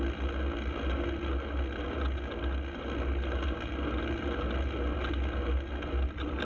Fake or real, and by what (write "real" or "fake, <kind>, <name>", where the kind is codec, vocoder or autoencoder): real